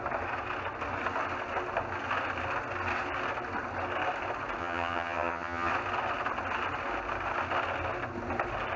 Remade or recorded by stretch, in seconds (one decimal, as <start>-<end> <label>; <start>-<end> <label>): 0.0-4.6 recorded; 4.6-5.7 remade; 5.7-8.8 recorded

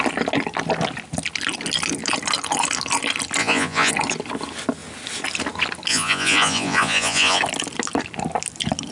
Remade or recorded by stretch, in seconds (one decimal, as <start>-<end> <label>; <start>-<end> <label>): 0.0-3.4 recorded; 3.4-3.9 remade; 3.9-5.9 recorded; 5.9-7.4 remade; 7.4-8.9 recorded

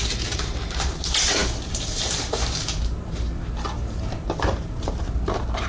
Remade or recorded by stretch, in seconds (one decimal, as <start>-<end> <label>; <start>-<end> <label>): 0.0-2.9 remade; 2.9-4.5 recorded; 4.5-5.7 remade

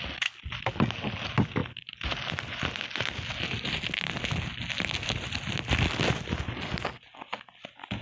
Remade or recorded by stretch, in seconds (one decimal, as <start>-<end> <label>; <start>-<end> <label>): 0.0-8.0 recorded

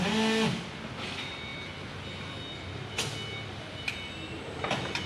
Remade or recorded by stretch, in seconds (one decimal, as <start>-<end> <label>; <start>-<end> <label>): 0.0-5.1 recorded

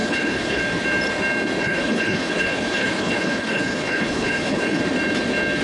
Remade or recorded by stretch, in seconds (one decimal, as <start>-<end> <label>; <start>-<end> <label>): 0.0-0.6 remade; 0.6-1.6 recorded; 1.6-4.8 remade; 4.8-5.6 recorded